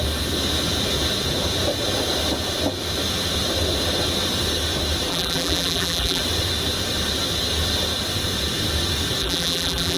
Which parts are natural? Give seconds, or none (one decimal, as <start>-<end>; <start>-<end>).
0.0-5.1; 6.2-9.2